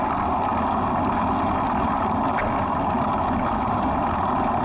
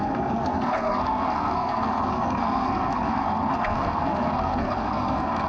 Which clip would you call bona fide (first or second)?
first